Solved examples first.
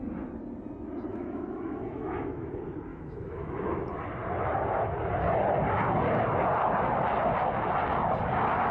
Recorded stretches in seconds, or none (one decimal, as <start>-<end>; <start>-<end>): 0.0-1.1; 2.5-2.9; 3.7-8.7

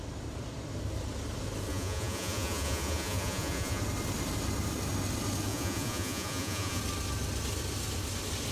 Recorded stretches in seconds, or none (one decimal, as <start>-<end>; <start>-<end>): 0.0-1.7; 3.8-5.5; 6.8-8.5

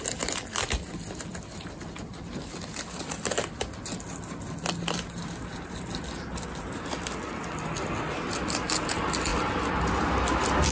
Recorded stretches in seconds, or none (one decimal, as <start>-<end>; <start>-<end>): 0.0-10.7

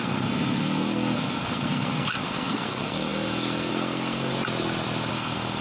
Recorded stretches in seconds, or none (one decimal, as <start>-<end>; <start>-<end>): 4.3-5.1